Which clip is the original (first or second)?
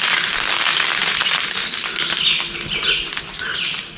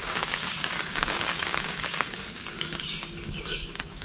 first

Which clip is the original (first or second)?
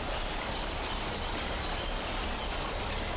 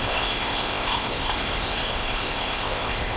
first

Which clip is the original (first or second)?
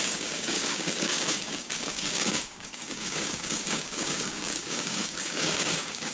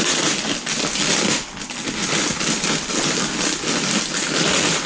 second